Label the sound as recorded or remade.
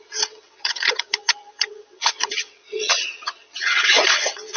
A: remade